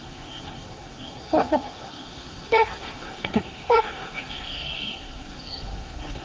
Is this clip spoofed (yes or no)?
yes